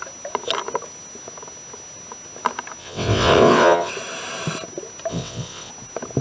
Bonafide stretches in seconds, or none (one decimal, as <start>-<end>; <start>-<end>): 0.0-2.8; 3.9-5.1; 5.7-6.2

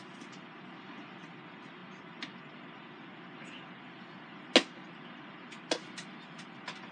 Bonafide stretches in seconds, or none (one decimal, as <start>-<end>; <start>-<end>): 0.0-6.9